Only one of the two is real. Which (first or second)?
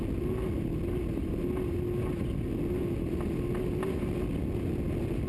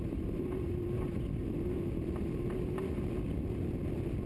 first